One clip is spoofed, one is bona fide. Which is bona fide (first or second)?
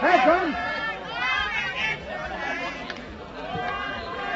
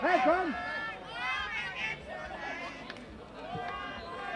second